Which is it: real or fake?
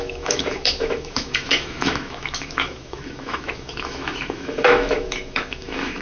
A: fake